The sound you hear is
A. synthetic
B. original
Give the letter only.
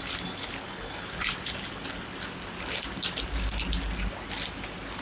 B